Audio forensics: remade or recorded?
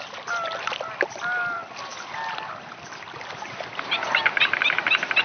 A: remade